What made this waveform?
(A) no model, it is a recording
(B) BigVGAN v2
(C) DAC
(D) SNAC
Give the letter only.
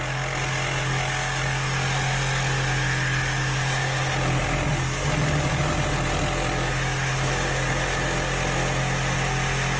A